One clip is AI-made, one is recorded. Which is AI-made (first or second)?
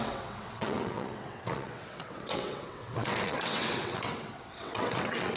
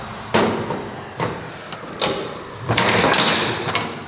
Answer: first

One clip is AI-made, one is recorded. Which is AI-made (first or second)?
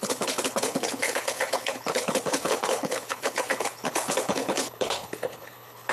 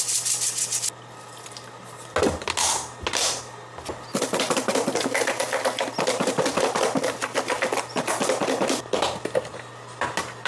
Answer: first